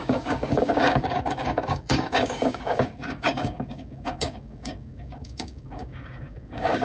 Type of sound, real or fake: fake